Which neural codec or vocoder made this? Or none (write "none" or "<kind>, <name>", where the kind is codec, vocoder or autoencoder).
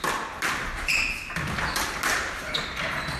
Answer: none